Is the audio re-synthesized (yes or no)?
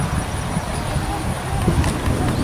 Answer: no